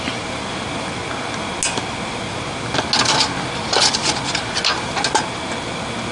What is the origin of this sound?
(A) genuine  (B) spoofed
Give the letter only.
A